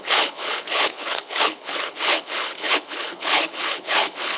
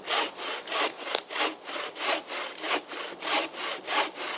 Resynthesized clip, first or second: first